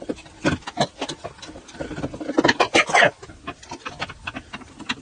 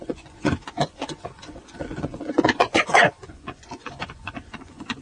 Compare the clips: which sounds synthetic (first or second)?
second